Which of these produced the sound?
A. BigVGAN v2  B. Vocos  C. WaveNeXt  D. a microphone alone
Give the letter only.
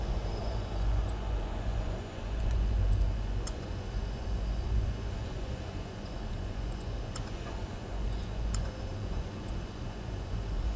B